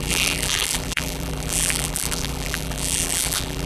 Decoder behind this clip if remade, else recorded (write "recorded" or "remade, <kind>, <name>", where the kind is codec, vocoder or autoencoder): remade, vocoder, BigVGAN v2